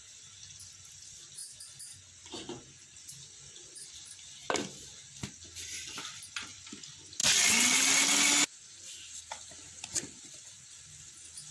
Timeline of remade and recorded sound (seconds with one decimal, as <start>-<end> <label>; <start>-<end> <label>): 0.0-11.5 recorded